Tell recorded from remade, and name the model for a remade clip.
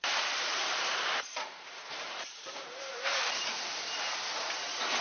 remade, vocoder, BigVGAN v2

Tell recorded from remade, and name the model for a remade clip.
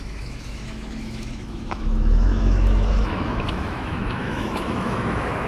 remade, autoencoder, DAC-VAE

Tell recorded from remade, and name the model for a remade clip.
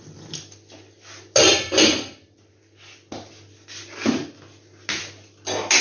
recorded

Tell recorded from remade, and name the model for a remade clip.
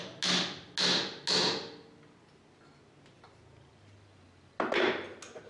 recorded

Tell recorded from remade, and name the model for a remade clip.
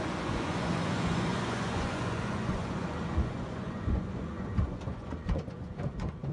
remade, vocoder, Vocos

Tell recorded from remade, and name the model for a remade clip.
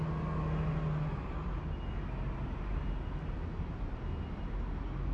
recorded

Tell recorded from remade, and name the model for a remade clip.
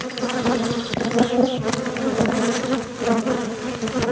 recorded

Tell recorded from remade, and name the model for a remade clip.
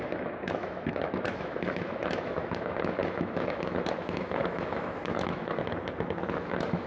remade, autoencoder, DAC-VAE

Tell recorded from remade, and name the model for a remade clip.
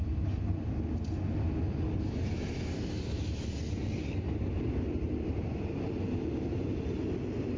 recorded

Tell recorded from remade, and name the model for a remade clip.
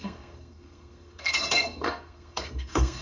remade, codec, SNAC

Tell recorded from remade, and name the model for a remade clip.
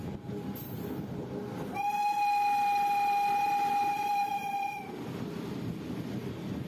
recorded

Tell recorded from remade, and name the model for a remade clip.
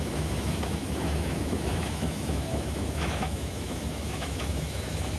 remade, autoencoder, DAC-VAE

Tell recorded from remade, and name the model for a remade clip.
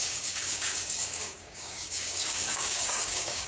remade, codec, DAC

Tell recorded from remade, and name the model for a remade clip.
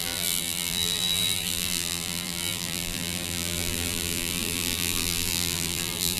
remade, vocoder, BigVGAN v2